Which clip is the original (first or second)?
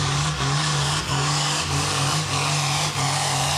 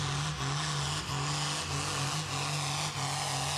second